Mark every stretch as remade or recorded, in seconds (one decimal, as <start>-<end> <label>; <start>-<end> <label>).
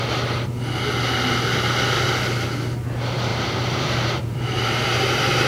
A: 0.0-3.3 recorded; 3.3-5.5 remade